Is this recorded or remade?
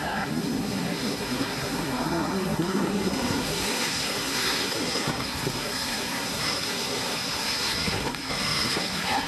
remade